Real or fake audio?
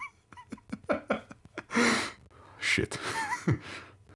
real